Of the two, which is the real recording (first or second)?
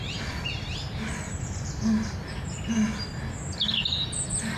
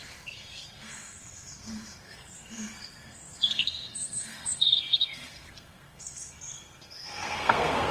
first